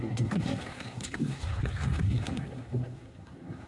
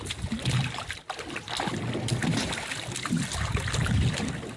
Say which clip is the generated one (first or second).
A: first